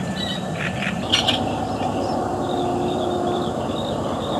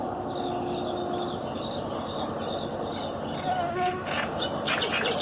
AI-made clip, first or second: first